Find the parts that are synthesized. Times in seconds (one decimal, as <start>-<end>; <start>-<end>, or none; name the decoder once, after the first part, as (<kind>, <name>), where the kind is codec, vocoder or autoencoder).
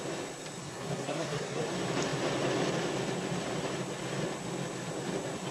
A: 0.6-1.6 (codec, SNAC)